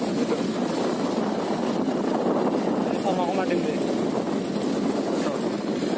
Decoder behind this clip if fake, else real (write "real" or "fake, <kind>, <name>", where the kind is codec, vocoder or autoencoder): real